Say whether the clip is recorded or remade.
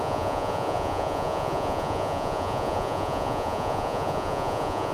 remade